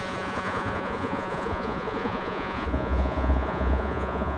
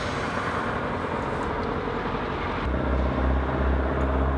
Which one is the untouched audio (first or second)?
second